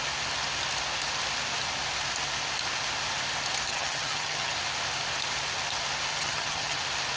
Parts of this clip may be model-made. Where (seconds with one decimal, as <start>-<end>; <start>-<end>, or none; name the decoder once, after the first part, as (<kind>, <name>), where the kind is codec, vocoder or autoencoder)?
3.7-4.5 (vocoder, HiFi-GAN); 6.1-6.8